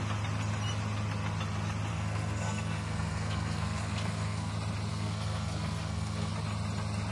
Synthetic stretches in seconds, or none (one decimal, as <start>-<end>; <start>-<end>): 1.9-4.5; 4.9-6.3